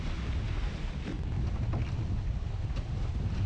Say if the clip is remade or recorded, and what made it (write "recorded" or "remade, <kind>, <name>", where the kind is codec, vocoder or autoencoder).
recorded